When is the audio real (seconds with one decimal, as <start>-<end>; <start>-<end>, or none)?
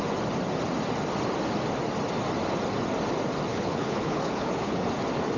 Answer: 0.0-3.5; 4.9-5.4